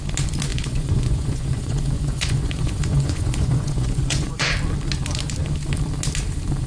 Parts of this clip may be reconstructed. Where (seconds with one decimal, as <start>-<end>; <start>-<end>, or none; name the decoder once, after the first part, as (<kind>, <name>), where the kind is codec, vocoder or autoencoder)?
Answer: 0.5-4.5 (vocoder, Vocos)